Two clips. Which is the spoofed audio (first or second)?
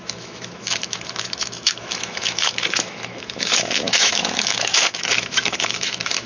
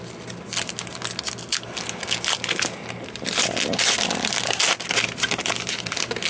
first